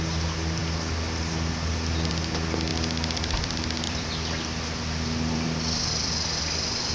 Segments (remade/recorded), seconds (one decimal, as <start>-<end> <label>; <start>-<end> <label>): 0.0-2.7 recorded; 2.7-6.9 remade

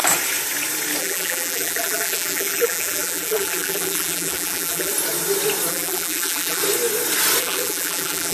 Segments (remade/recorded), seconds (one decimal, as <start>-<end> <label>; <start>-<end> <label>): 0.0-1.0 recorded; 1.0-4.9 remade; 4.9-5.7 recorded; 5.7-6.6 remade; 6.6-7.4 recorded; 7.4-8.3 remade

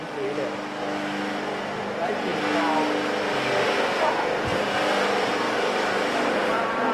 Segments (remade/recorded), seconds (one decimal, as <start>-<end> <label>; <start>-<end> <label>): 0.0-4.5 recorded; 4.5-6.9 remade

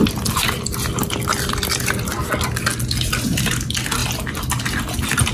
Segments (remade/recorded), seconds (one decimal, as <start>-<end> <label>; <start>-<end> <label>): 0.0-5.3 recorded

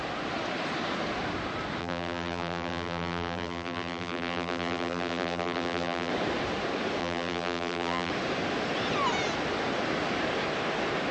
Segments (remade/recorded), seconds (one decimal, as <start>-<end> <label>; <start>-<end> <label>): 0.0-1.8 recorded; 1.8-6.1 remade; 6.1-7.0 recorded; 7.0-8.1 remade; 8.1-11.1 recorded

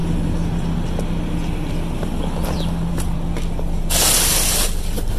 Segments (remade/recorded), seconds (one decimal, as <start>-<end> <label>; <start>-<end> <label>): 0.0-5.2 recorded